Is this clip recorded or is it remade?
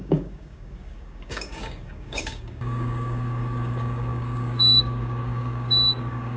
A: remade